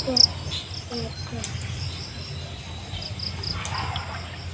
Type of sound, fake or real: real